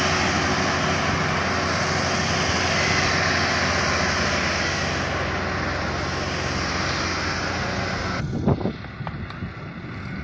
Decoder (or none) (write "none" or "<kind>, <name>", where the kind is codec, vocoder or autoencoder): none